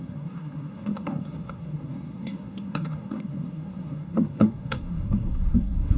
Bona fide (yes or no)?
no